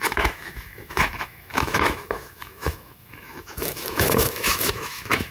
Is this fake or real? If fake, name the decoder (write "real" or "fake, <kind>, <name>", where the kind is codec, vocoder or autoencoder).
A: fake, autoencoder, DAC-VAE